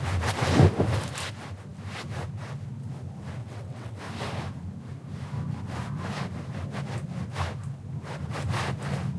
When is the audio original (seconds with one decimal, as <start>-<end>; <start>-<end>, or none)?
0.0-3.4; 4.0-9.2